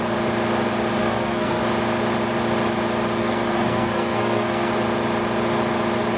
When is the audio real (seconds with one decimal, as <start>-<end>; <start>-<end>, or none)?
0.0-1.0; 1.6-3.2; 4.7-6.2

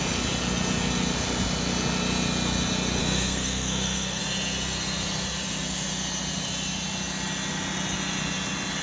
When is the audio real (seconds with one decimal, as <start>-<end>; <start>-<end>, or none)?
0.0-3.0; 4.2-8.8

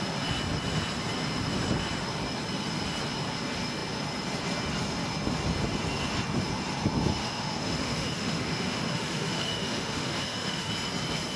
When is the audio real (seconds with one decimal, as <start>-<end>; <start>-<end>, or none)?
0.0-7.2; 10.7-11.4

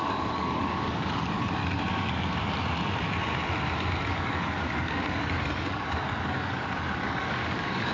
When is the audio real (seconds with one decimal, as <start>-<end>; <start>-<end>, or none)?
1.6-4.0